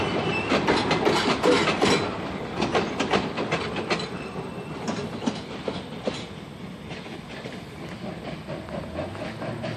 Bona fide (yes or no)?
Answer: yes